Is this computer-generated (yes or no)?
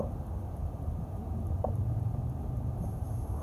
yes